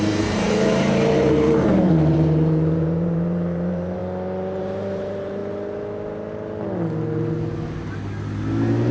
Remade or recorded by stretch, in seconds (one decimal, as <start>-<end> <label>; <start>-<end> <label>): 0.0-4.0 remade; 4.0-4.6 recorded; 4.6-5.4 remade; 5.4-8.9 recorded